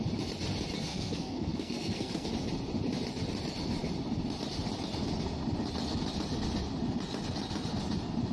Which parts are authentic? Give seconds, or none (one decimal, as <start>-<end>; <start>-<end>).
0.0-0.9; 2.3-8.3